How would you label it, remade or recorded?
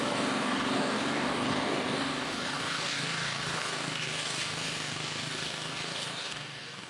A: remade